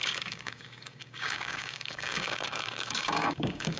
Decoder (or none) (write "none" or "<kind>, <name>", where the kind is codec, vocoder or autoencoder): codec, DAC